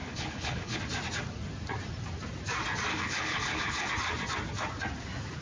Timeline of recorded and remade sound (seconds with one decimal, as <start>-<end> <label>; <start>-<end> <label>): 0.0-0.8 remade; 0.8-2.9 recorded; 2.9-3.9 remade; 3.9-5.4 recorded

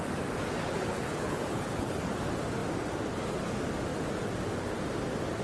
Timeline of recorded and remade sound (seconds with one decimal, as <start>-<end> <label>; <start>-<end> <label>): 0.0-0.6 recorded; 0.6-2.2 remade; 2.2-5.4 recorded

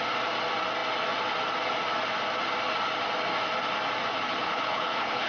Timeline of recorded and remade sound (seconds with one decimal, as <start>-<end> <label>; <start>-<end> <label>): 0.0-4.4 recorded; 4.4-5.3 remade

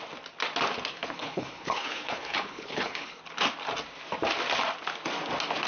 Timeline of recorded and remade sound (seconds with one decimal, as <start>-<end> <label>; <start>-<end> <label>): 0.0-0.9 recorded; 0.9-3.2 remade; 3.2-5.7 recorded

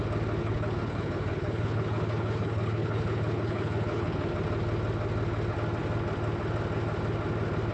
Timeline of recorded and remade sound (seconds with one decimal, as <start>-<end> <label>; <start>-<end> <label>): 0.0-0.4 recorded; 0.4-4.3 remade; 4.3-7.7 recorded